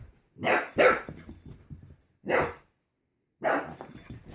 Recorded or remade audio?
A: recorded